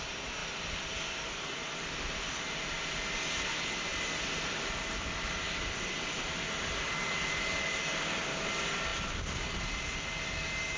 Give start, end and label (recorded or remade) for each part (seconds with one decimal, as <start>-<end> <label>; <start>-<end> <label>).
0.0-10.8 recorded